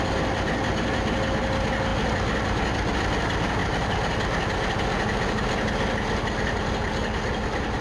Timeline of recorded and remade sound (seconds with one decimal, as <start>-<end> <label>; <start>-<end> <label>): 0.0-7.8 recorded